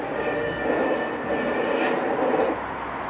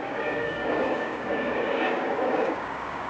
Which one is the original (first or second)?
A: first